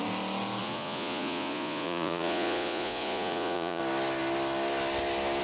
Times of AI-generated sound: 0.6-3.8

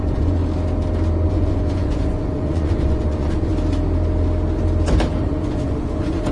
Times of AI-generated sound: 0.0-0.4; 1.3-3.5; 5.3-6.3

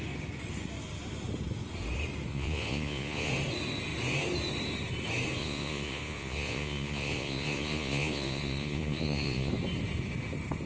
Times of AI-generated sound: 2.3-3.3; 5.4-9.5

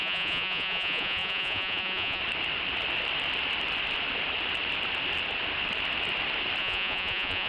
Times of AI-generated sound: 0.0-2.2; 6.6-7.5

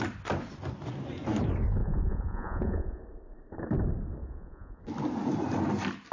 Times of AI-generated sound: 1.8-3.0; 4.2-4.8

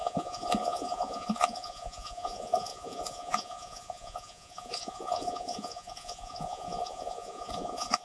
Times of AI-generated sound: 0.0-8.0

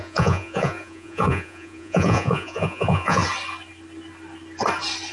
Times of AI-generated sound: 0.0-3.2